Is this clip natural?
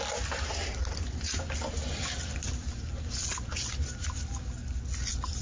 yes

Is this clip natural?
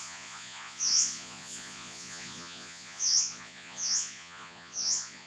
no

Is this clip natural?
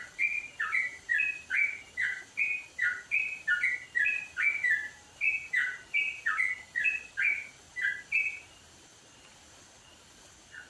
yes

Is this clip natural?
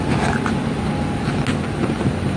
yes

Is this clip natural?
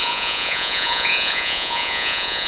no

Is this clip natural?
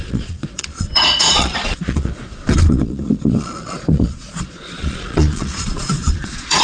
no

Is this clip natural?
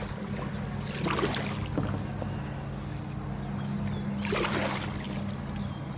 yes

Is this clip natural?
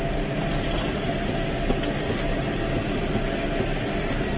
yes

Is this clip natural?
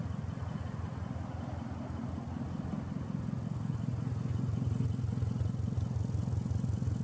yes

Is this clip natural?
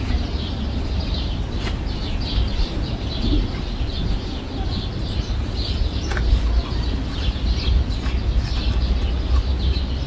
yes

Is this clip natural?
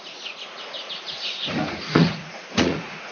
no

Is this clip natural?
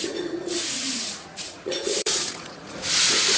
no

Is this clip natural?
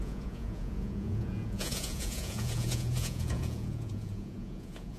no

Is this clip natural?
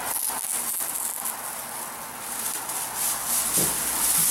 yes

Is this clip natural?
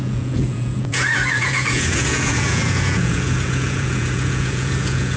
no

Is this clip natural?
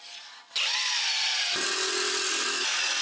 yes